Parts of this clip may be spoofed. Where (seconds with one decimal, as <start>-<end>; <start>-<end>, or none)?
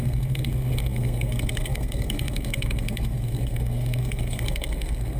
0.0-5.2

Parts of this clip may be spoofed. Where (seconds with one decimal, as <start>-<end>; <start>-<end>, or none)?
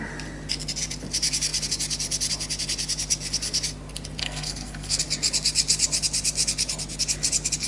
4.2-5.0